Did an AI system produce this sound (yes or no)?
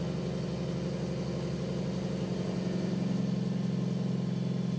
no